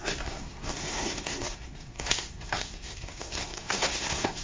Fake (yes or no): yes